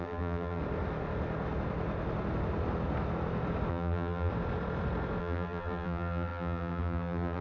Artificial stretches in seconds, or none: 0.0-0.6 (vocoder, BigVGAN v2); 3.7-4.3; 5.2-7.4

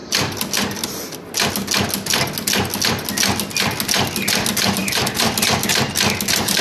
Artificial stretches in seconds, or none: 4.8-6.6 (vocoder, BigVGAN v2)

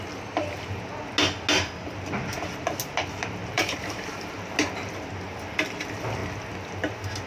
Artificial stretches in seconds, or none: 3.4-4.3 (vocoder, BigVGAN v2)

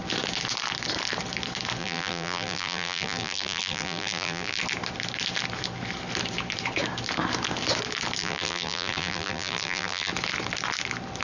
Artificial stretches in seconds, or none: 1.8-4.6 (vocoder, BigVGAN v2); 8.2-10.1